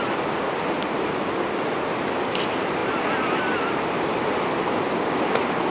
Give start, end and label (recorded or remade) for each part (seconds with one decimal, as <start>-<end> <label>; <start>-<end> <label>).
0.0-5.7 recorded